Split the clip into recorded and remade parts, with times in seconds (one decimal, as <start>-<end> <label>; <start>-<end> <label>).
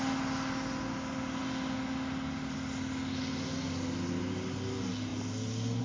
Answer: 0.0-5.8 recorded